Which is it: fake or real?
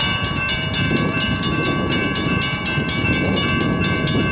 fake